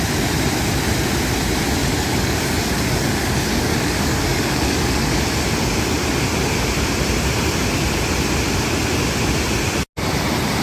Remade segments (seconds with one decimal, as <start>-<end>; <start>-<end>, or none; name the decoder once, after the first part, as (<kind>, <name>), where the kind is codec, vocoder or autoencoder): 1.8-5.2 (codec, DAC)